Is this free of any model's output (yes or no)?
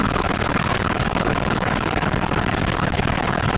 no